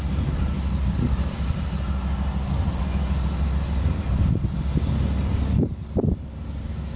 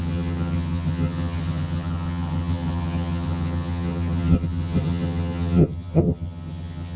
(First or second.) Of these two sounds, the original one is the first